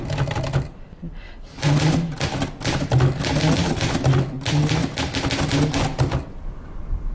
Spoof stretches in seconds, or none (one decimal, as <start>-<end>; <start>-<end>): none